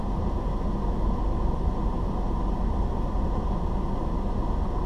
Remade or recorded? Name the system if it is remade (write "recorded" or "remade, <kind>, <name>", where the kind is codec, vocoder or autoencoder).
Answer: recorded